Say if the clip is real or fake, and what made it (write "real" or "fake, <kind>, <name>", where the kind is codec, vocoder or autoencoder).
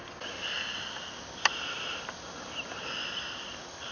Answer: real